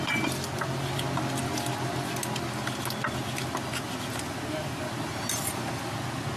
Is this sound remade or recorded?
recorded